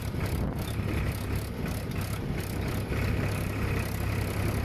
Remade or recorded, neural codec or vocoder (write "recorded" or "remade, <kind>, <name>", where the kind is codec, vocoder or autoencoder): recorded